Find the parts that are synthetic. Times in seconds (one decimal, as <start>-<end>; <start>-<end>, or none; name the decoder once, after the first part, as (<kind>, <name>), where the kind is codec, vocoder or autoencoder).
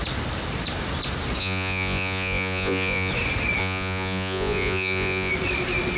1.4-3.1 (vocoder, Vocos); 3.6-5.3